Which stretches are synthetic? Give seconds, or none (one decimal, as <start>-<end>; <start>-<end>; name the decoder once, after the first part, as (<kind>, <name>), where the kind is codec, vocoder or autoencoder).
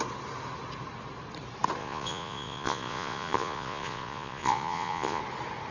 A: 1.8-5.2 (vocoder, Vocos)